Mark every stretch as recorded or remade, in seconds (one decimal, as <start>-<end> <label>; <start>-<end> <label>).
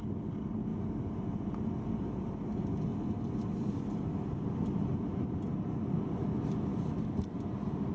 0.0-7.9 recorded